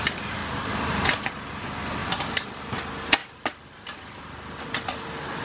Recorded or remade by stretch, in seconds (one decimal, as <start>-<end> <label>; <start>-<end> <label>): 0.0-2.0 recorded; 2.0-2.8 remade; 2.8-3.2 recorded; 3.2-4.0 remade; 4.0-5.4 recorded